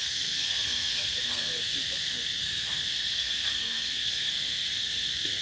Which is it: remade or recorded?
remade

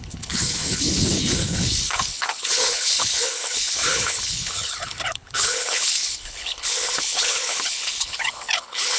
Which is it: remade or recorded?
remade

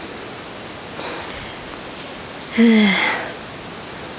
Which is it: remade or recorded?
recorded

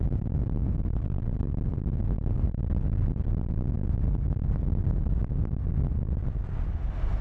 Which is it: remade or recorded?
recorded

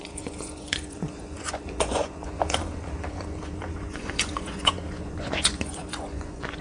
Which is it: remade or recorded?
remade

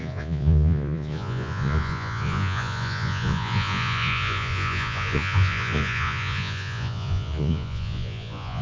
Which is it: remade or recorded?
remade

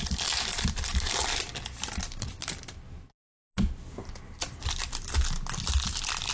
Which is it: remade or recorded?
recorded